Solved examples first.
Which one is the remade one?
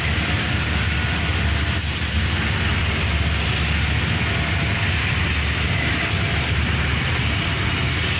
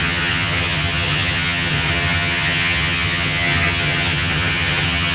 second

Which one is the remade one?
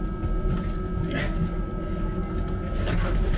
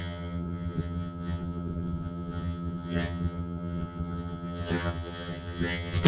second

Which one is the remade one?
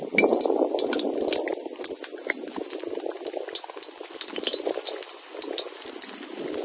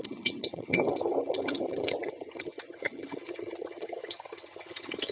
second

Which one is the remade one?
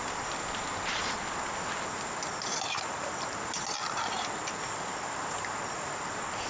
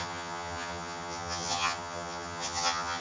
second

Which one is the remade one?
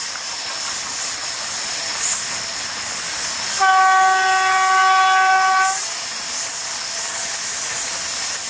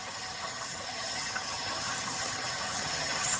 second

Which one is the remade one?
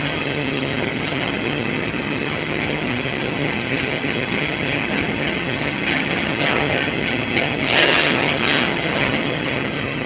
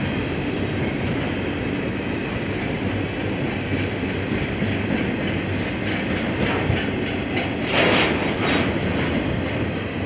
first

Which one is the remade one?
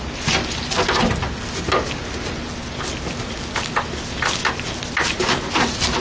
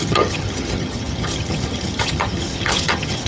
second